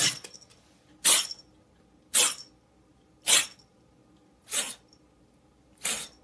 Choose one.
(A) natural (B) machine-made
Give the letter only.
A